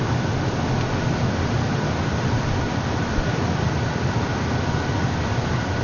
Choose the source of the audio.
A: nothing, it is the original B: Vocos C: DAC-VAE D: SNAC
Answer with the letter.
A